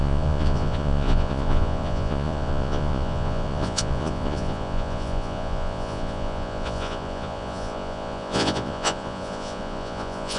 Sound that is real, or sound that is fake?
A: fake